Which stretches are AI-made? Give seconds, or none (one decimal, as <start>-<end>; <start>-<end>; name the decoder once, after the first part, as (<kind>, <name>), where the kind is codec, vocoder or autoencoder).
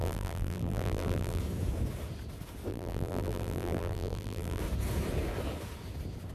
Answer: 0.0-1.4 (vocoder, BigVGAN v2); 2.7-4.6